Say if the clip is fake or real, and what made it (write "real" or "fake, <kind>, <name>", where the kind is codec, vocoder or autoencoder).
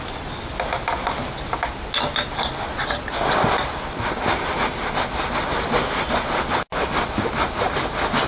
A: real